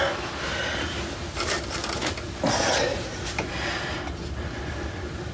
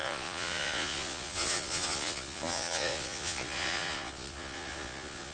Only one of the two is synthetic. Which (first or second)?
second